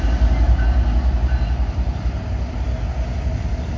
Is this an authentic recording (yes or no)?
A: yes